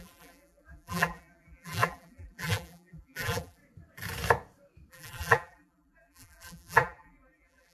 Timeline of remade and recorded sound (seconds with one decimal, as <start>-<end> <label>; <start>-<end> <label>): 0.0-3.6 remade; 3.6-4.9 recorded; 4.9-7.7 remade